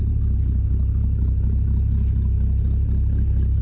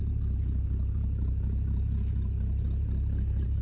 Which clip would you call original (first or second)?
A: first